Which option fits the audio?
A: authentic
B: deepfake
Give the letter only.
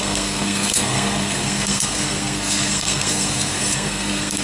B